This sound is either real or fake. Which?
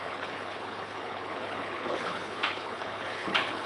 fake